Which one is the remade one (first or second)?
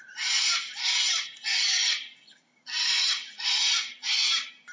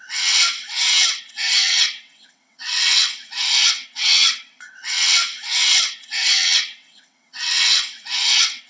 second